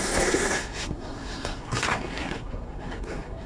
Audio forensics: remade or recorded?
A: remade